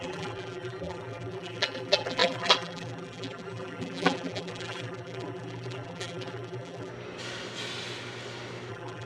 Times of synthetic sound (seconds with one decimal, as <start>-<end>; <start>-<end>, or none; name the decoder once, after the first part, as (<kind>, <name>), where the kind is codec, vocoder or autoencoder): 0.0-6.9 (vocoder, BigVGAN v2); 8.7-9.1